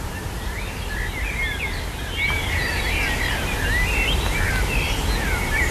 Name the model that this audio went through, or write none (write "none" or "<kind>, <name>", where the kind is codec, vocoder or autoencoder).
none